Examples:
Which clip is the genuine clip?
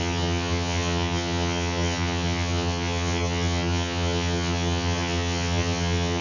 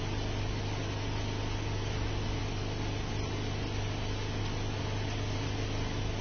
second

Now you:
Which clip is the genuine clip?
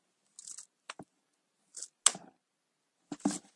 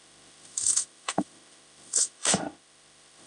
first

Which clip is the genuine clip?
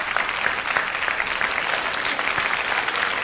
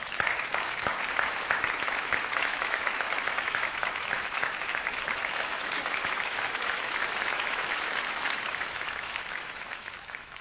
first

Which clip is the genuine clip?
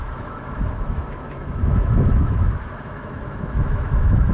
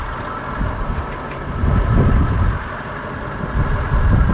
second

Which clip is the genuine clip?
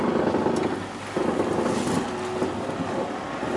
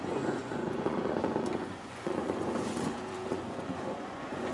first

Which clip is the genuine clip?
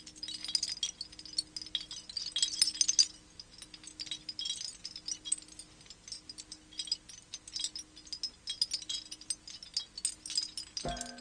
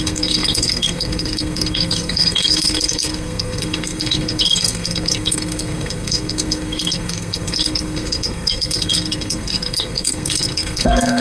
first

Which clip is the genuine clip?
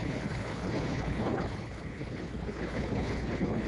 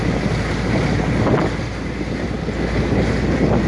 second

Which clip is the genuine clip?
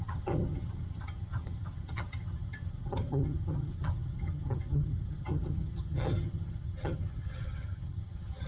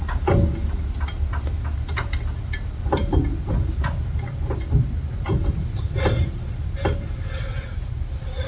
second